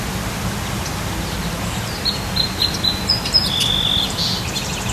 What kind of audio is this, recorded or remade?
recorded